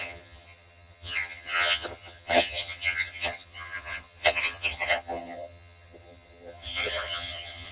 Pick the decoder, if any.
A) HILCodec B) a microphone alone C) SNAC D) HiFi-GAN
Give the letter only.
D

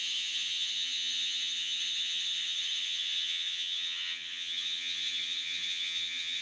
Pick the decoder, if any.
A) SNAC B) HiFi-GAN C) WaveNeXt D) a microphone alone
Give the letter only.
B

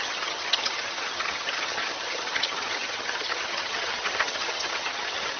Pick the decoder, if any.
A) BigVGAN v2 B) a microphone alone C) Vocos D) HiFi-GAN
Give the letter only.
D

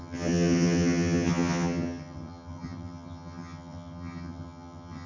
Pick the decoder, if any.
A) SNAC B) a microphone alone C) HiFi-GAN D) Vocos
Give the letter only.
C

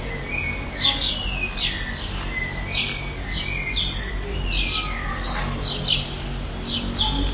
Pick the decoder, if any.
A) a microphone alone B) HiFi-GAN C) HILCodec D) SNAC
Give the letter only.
A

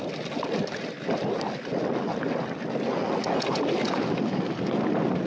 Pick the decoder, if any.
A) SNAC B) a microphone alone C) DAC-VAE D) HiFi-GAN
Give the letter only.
B